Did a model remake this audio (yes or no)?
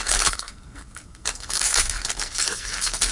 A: yes